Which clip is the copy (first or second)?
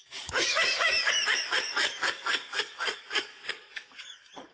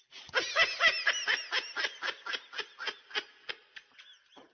first